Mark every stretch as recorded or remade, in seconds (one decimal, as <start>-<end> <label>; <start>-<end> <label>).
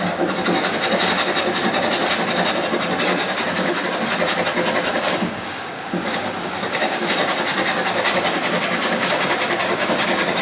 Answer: 0.0-3.1 recorded; 3.1-3.9 remade; 3.9-4.9 recorded; 4.9-7.1 remade; 7.1-7.5 recorded; 7.5-10.4 remade